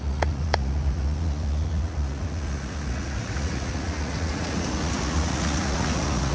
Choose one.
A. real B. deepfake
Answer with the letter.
B